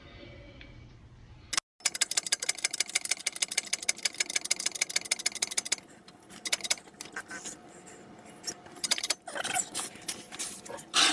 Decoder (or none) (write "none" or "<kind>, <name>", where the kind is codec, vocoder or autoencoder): none